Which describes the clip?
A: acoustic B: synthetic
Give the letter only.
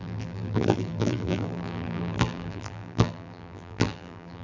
B